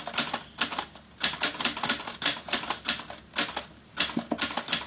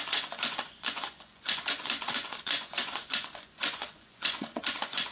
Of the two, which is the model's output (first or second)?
second